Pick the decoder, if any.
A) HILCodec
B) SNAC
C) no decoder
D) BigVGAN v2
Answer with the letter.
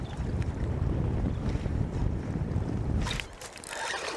D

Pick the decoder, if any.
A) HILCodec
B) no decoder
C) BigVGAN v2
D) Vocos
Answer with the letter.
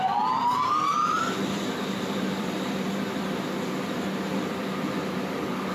C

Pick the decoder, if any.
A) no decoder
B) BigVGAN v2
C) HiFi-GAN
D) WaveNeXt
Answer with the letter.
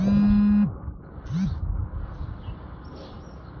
A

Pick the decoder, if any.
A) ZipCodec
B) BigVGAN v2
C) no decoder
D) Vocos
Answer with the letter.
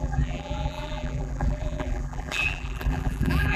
B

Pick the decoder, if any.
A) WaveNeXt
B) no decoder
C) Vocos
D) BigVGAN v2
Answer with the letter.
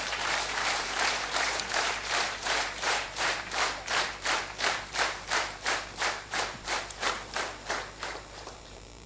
D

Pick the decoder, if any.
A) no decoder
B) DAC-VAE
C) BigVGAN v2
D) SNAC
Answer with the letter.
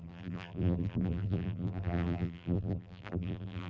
C